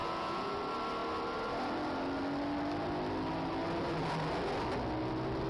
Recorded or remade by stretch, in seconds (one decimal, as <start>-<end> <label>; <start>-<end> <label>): 0.0-0.6 remade; 0.6-5.5 recorded